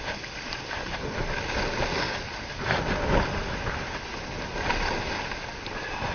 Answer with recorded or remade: recorded